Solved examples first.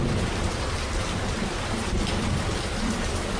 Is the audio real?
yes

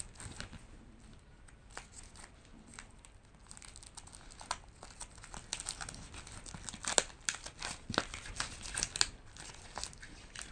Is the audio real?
yes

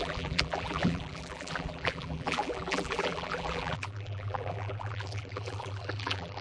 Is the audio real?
no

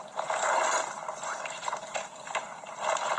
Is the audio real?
yes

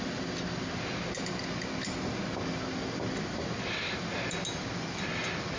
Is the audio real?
yes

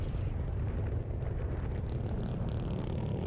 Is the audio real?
yes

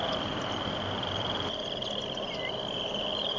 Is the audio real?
no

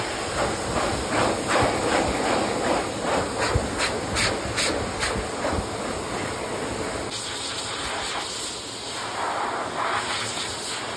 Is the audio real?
yes